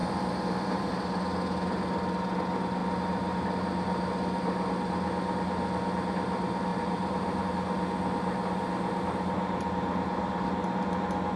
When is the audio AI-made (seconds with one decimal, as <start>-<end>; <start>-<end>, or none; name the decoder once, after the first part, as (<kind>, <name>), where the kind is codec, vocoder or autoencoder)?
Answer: 0.0-0.9 (vocoder, BigVGAN v2); 6.7-7.5